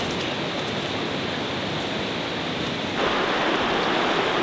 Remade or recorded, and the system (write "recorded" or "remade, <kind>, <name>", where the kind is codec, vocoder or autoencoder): recorded